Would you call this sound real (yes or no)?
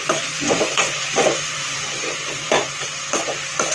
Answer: no